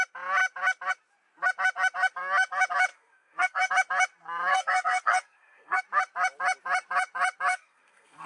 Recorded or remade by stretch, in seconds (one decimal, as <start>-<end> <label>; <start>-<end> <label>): 0.0-2.9 recorded; 2.9-3.7 remade; 3.7-4.5 recorded; 4.5-5.8 remade; 5.8-7.5 recorded; 7.5-8.3 remade